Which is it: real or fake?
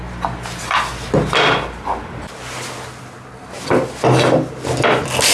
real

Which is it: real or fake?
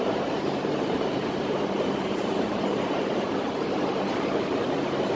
fake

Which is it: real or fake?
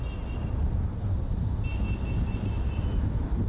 real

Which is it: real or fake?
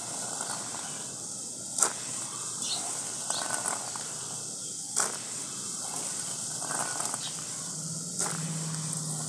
real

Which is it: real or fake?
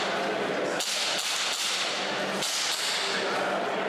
real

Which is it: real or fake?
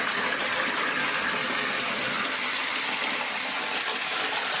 real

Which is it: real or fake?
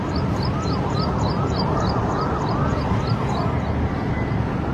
real